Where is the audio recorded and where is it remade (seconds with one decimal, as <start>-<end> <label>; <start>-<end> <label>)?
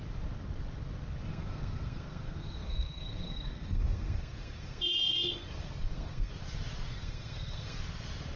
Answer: 0.0-1.3 recorded; 1.3-6.3 remade; 6.3-6.9 recorded; 6.9-7.8 remade; 7.8-8.4 recorded